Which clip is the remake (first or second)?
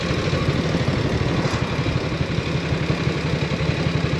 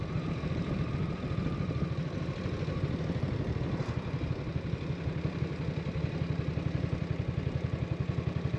second